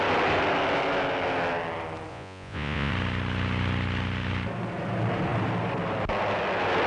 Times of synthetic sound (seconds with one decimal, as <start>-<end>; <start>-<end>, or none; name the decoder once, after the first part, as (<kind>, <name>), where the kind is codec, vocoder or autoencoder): 2.1-2.9 (vocoder, Vocos)